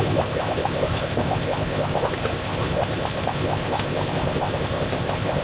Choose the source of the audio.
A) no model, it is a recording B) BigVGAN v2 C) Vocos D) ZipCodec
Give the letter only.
D